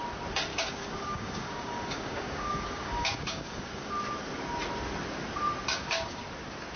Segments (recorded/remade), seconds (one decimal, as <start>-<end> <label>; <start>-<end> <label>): 0.0-0.5 recorded; 0.5-3.9 remade; 3.9-5.7 recorded; 5.7-6.2 remade; 6.2-6.8 recorded